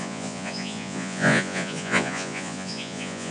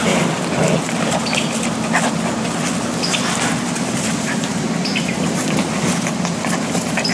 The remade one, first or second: first